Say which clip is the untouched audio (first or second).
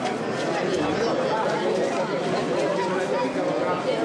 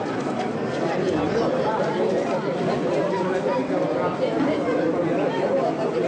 first